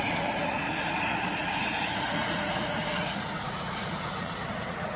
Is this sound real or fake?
fake